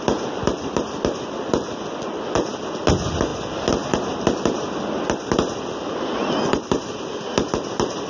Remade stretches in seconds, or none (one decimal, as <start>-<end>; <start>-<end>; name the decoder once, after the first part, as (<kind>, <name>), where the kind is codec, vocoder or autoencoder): none

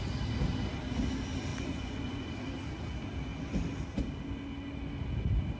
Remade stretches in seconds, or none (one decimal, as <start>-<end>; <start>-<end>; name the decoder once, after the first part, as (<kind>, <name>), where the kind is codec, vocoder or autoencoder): 1.5-2.3 (vocoder, Vocos)